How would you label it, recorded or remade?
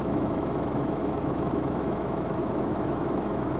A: remade